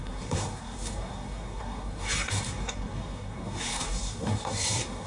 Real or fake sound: fake